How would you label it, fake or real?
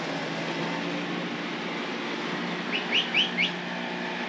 real